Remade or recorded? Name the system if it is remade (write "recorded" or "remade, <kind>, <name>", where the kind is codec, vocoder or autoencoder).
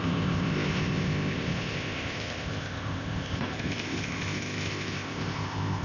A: remade, codec, ZipCodec